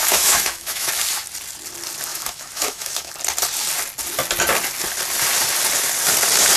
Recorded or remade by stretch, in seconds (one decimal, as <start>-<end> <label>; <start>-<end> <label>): 0.0-0.9 remade; 0.9-2.1 recorded; 2.1-3.1 remade; 3.1-6.6 recorded